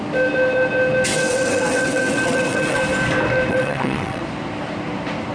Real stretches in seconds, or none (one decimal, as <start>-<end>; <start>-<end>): 0.0-1.1; 2.8-3.5; 4.2-5.3